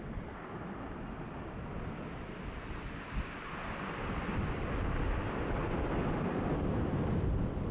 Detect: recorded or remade recorded